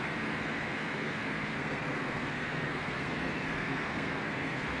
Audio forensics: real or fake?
fake